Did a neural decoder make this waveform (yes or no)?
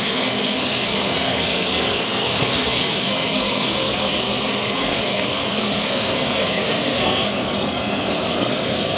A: yes